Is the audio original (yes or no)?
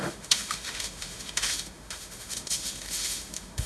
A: no